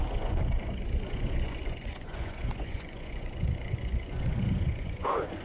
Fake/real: fake